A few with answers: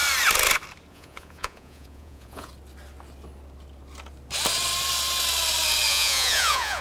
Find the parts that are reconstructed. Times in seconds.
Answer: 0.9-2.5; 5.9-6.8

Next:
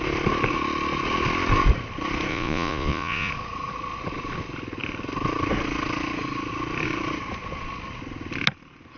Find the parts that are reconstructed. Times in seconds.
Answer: 2.3-3.3

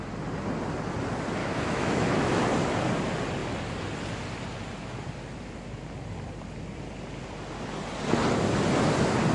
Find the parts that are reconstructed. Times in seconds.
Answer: 1.4-2.4

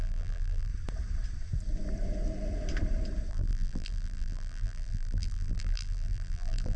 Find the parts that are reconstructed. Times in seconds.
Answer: 0.0-0.7; 3.3-6.8

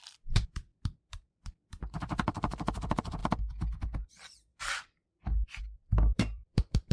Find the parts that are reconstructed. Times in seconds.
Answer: 0.0-3.2; 4.1-4.5; 5.6-6.9

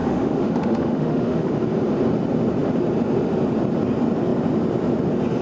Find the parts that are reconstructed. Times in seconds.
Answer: 0.0-1.5

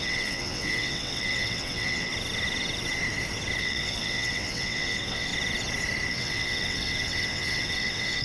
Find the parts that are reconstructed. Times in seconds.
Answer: 0.0-2.1; 3.6-5.3; 6.1-8.2